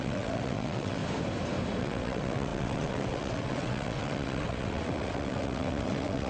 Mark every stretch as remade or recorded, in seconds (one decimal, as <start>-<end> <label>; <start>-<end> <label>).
0.0-1.0 remade; 1.0-1.8 recorded; 1.8-6.3 remade